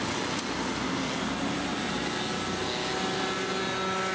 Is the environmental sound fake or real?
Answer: real